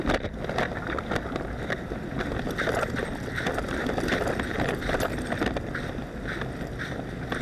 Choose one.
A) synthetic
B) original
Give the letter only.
B